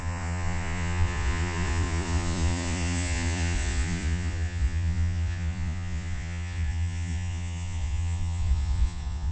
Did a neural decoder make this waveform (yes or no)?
yes